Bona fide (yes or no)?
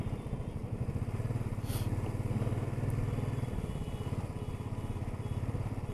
yes